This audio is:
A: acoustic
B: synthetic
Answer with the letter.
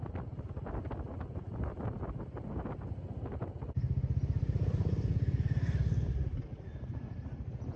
A